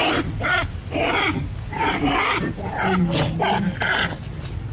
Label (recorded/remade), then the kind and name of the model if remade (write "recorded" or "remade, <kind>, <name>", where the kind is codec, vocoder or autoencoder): recorded